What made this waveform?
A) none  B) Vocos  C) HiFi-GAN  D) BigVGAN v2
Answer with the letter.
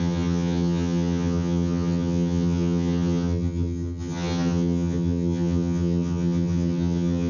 C